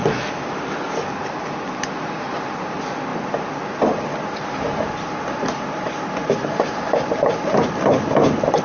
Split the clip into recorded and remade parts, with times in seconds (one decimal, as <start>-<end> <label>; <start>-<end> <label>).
0.0-8.6 recorded